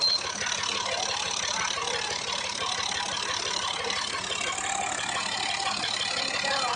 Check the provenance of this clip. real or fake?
real